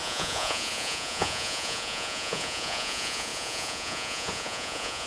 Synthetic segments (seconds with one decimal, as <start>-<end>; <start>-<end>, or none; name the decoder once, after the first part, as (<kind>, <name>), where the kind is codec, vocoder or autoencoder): 0.0-5.1 (vocoder, Vocos)